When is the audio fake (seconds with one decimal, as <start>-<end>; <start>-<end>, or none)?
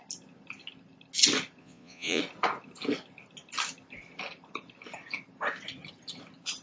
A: 1.6-2.2